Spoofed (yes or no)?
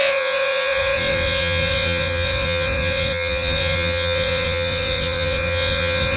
yes